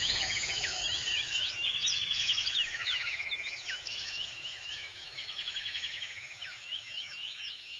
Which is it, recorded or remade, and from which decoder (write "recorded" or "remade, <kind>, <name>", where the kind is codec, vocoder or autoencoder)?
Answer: remade, autoencoder, DAC-VAE